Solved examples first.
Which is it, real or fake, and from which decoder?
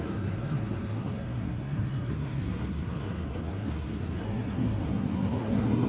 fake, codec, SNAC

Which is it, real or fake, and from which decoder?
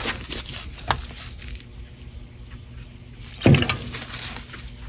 real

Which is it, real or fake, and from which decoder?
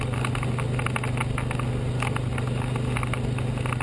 real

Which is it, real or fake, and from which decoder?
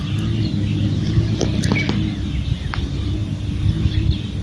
real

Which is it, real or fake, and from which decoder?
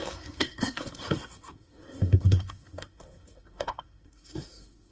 fake, codec, SNAC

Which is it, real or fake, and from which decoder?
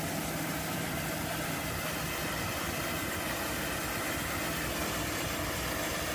real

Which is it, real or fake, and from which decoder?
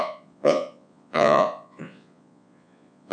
fake, vocoder, Vocos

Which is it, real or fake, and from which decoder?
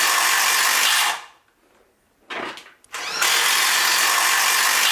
real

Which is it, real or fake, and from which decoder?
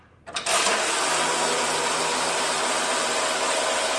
fake, vocoder, BigVGAN v2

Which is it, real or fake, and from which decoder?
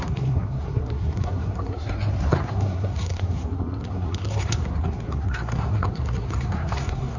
fake, codec, SNAC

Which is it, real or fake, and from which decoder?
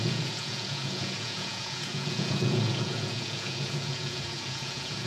fake, vocoder, Vocos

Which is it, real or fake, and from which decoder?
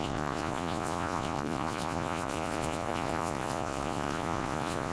fake, vocoder, Vocos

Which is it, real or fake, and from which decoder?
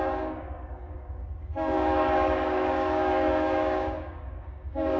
fake, codec, DAC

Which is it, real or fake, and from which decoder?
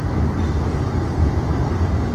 real